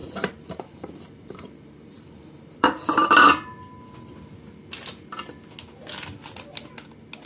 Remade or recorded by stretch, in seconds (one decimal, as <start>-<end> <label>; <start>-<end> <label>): 0.0-3.1 remade; 3.1-7.3 recorded

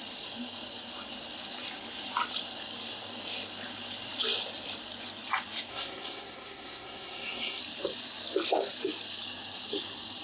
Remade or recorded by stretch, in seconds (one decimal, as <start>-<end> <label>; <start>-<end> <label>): 0.0-5.7 recorded; 5.7-7.6 remade; 7.6-10.2 recorded

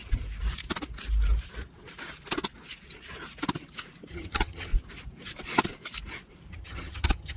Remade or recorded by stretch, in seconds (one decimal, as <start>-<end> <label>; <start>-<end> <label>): 0.0-4.1 recorded; 4.1-4.7 remade; 4.7-6.5 recorded; 6.5-7.4 remade

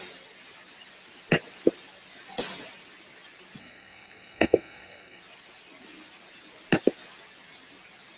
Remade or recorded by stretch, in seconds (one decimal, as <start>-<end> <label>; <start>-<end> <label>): 0.0-3.6 recorded; 3.6-5.2 remade; 5.2-8.2 recorded

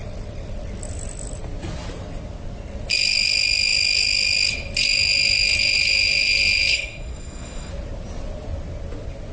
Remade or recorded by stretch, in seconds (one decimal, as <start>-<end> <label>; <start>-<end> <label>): 0.0-6.7 recorded; 6.7-7.7 remade; 7.7-9.3 recorded

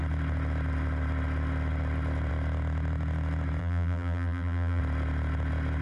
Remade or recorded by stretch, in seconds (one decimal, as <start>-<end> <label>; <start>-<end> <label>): 0.0-3.6 recorded; 3.6-4.8 remade; 4.8-5.8 recorded

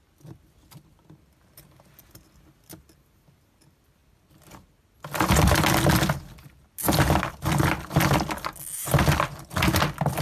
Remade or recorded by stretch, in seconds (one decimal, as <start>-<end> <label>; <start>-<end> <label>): 0.0-10.2 recorded